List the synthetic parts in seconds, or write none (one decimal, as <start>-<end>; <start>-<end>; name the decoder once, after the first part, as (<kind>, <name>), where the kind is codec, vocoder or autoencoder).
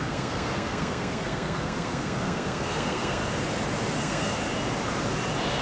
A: 0.0-3.2 (codec, SNAC); 4.0-4.4